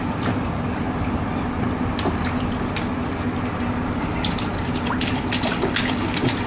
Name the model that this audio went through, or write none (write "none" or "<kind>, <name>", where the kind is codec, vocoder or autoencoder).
none